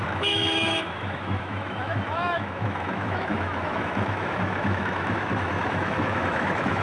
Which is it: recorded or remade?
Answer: remade